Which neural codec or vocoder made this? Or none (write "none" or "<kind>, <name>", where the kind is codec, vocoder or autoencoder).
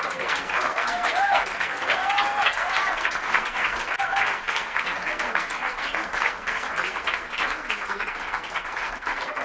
codec, SNAC